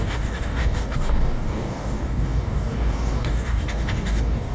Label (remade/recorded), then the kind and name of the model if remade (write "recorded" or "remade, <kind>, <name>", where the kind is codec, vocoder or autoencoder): remade, codec, DAC